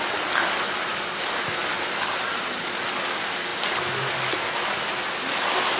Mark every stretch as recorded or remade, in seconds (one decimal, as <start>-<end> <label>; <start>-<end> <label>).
0.0-5.8 recorded